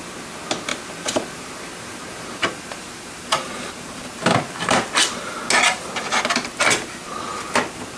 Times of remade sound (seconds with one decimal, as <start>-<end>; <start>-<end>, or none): 0.7-5.4